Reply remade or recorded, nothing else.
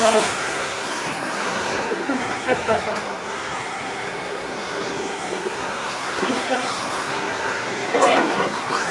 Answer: remade